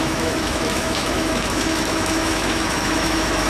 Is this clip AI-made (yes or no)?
yes